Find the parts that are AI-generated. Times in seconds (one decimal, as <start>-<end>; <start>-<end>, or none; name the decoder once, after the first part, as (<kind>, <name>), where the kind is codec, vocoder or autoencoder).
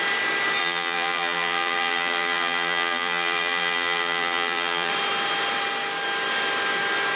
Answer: 0.6-4.9 (vocoder, BigVGAN v2)